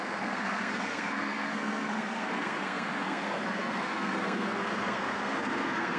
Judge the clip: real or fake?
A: fake